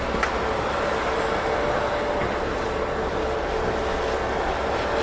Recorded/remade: recorded